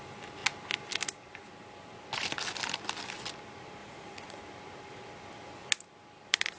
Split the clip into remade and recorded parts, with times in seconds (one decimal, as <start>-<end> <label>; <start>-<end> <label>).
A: 0.0-3.8 recorded; 3.8-4.4 remade; 4.4-6.6 recorded